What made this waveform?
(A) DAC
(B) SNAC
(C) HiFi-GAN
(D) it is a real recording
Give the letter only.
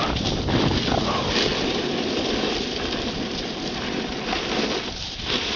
D